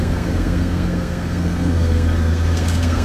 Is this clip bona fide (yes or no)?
no